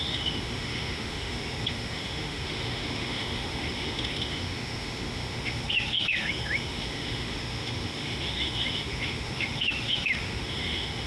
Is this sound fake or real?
fake